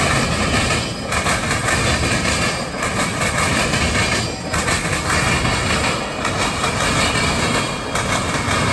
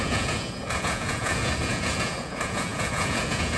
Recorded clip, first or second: first